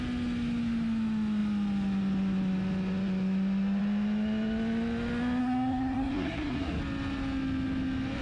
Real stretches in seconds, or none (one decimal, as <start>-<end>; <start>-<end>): 0.0-5.4; 6.8-8.2